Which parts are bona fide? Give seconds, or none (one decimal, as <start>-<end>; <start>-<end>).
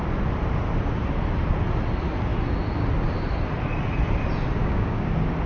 0.0-4.6; 5.1-5.5